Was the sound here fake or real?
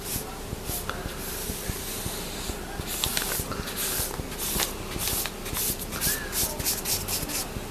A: real